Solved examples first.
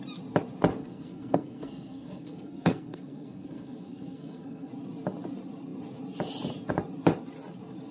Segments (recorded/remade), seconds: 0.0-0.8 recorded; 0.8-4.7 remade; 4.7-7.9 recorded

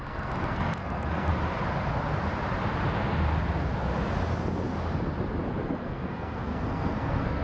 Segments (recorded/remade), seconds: 0.0-1.3 remade; 1.3-5.6 recorded; 5.6-7.4 remade